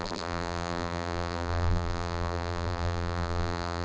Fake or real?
fake